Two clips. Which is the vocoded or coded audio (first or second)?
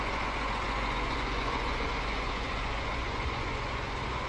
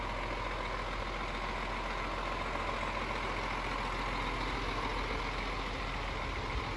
first